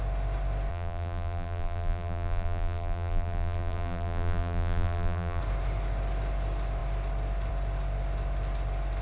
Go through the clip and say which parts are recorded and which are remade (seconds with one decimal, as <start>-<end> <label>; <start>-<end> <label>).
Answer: 0.0-0.7 recorded; 0.7-5.4 remade; 5.4-9.0 recorded